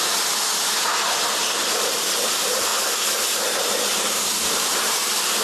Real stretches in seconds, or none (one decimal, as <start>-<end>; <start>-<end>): 0.9-1.6; 2.7-3.2